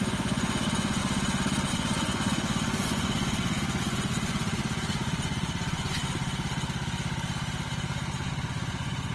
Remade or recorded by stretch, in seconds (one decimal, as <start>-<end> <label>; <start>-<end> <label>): 0.0-1.0 remade; 1.0-1.7 recorded; 1.7-6.0 remade; 6.0-8.3 recorded; 8.3-9.1 remade